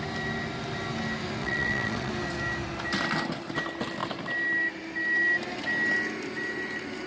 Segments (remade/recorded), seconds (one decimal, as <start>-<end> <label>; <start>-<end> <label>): 0.0-1.4 recorded; 1.4-2.1 remade; 2.1-7.1 recorded